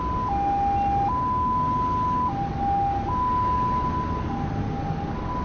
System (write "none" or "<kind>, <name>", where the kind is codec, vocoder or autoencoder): none